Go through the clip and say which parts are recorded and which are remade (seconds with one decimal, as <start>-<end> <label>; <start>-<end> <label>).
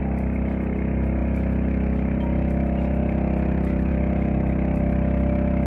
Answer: 0.0-5.7 recorded